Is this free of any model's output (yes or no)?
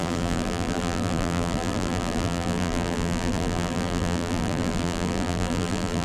no